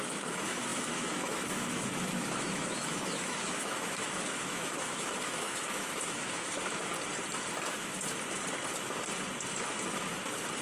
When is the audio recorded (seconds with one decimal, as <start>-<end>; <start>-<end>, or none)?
6.9-10.6